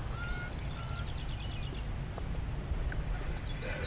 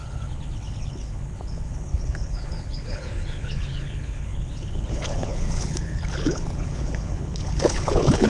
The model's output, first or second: second